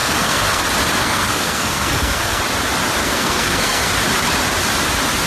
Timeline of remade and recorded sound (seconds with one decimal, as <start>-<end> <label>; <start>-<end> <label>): 0.0-0.6 remade; 0.6-1.0 recorded; 1.0-2.4 remade; 2.4-3.0 recorded; 3.0-3.9 remade; 3.9-5.3 recorded